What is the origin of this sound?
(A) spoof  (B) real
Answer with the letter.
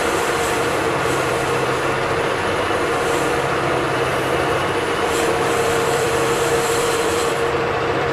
A